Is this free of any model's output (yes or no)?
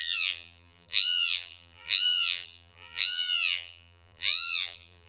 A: no